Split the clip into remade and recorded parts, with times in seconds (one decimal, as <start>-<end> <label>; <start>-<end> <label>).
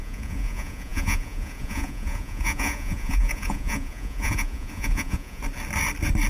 0.0-5.4 remade; 5.4-6.3 recorded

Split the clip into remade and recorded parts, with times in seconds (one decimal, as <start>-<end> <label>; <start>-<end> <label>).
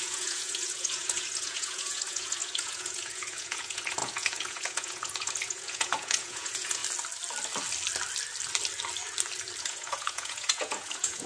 0.0-6.8 remade; 6.8-9.6 recorded; 9.6-11.3 remade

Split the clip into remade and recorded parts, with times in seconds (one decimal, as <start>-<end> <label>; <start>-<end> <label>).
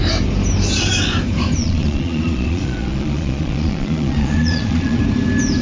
0.0-1.6 recorded; 1.6-5.0 remade; 5.0-5.6 recorded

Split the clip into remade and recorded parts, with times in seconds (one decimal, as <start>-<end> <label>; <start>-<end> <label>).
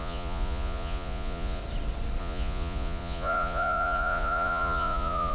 0.0-1.6 remade; 1.6-2.2 recorded; 2.2-5.3 remade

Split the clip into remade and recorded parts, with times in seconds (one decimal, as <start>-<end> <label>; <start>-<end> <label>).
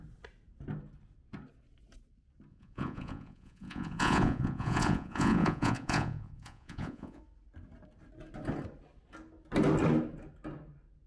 0.0-2.5 recorded; 2.5-7.2 remade; 7.2-11.1 recorded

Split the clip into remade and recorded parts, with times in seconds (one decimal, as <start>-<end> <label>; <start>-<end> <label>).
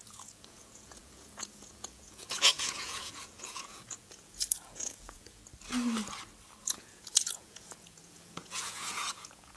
0.0-5.4 remade; 5.4-6.6 recorded; 6.6-9.6 remade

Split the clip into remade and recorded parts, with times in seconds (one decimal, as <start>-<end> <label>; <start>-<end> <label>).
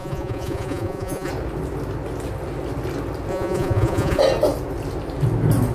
0.0-1.3 remade; 1.3-3.3 recorded; 3.3-4.2 remade; 4.2-5.7 recorded